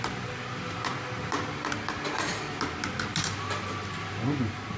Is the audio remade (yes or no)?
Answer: no